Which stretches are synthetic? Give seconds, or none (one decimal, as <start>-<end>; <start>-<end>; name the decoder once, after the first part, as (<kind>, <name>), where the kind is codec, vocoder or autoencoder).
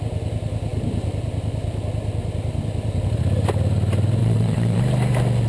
4.2-4.8 (vocoder, Vocos)